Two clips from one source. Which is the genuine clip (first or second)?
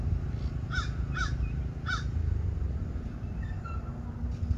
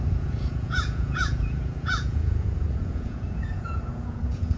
first